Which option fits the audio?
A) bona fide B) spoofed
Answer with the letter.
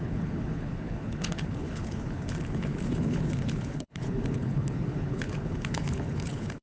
B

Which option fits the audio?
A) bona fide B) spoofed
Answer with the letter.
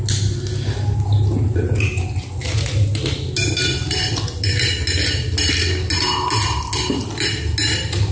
A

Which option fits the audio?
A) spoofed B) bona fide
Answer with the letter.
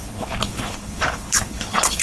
A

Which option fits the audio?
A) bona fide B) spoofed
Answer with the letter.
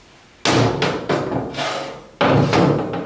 A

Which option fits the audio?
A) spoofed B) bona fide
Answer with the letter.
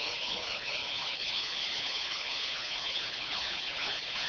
A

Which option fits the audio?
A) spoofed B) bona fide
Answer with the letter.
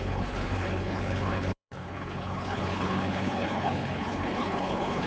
A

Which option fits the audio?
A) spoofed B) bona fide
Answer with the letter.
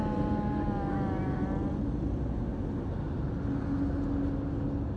B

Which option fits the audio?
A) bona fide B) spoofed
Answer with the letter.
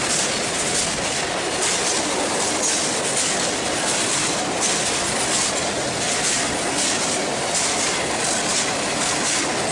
A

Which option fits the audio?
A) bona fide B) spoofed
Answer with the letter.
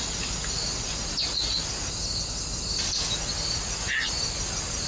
A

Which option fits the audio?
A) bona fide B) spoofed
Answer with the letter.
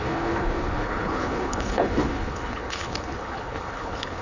B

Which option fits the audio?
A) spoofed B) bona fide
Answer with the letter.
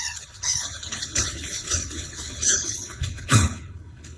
A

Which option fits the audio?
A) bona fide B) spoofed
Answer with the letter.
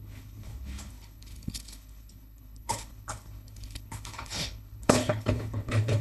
B